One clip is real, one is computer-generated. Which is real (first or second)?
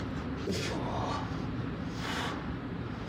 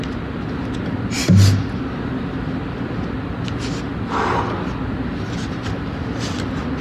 second